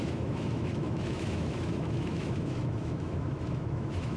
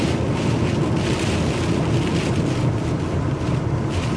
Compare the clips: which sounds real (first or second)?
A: second